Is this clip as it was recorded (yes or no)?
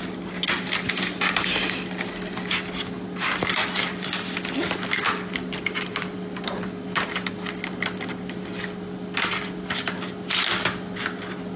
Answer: yes